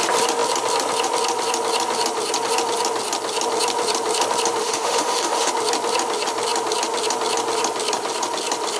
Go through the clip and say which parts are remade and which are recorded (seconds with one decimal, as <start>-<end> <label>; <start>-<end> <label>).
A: 0.0-4.6 recorded; 4.6-5.5 remade; 5.5-8.8 recorded